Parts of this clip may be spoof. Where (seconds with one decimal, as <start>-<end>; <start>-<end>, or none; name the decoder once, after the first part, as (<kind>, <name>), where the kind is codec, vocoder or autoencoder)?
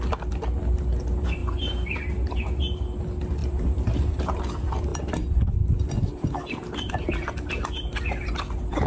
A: 1.4-2.6 (vocoder, BigVGAN v2); 3.4-4.4